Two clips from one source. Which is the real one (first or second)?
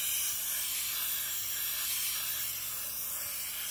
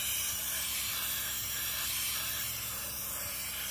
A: first